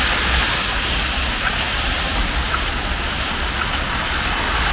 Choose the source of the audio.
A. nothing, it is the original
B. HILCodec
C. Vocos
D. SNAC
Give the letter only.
A